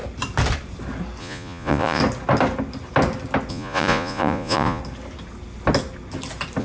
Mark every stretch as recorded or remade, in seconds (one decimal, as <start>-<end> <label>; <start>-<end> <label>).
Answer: 0.0-1.2 recorded; 1.2-2.0 remade; 2.0-3.5 recorded; 3.5-4.8 remade; 4.8-6.6 recorded